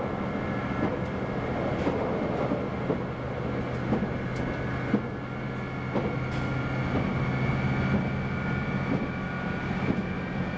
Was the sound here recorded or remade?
recorded